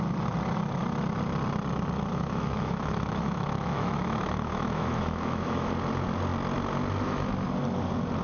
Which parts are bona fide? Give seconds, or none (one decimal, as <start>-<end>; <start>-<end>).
0.0-2.1; 5.7-8.2